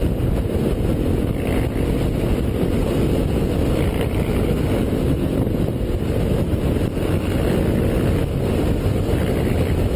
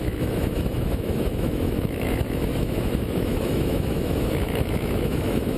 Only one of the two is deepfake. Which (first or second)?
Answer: second